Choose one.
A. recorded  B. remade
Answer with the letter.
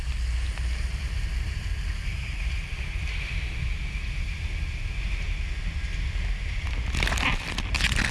A